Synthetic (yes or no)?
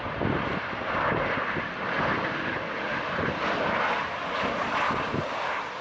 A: no